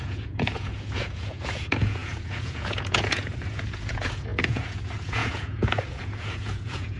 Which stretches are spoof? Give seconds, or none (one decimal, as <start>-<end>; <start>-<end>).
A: 0.0-7.0